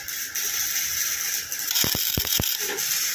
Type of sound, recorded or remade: recorded